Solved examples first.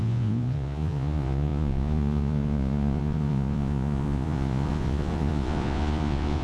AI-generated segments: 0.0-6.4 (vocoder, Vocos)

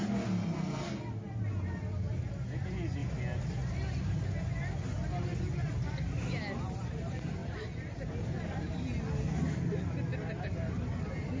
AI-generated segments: 7.4-9.0 (vocoder, BigVGAN v2)

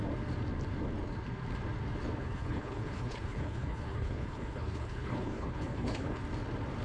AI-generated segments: 2.2-6.2 (codec, HILCodec)

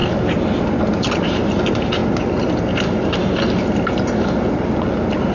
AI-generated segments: none

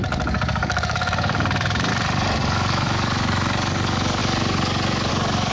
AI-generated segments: 0.0-1.9 (codec, DAC); 2.4-5.5

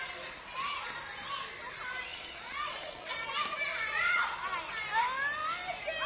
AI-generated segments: 2.1-3.1 (vocoder, Vocos); 3.7-4.4

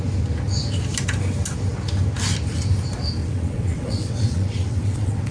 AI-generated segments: 3.2-5.3 (vocoder, WaveNeXt)

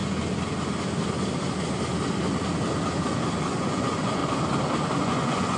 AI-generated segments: 3.4-4.2 (vocoder, Vocos); 5.0-5.6